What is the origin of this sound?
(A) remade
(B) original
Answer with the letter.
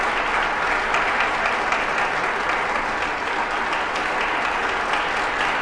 B